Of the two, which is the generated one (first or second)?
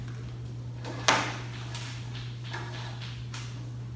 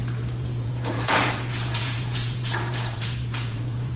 second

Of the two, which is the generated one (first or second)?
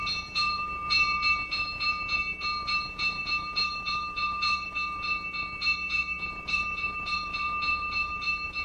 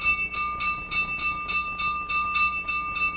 first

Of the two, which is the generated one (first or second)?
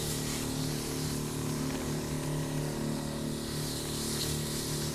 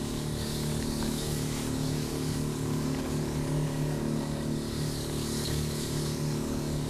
second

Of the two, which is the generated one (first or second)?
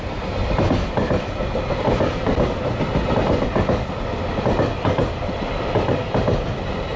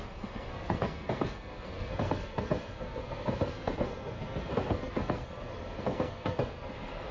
second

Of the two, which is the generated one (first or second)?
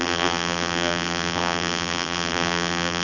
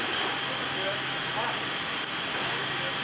first